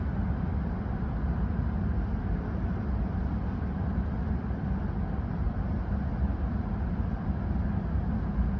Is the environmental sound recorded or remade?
recorded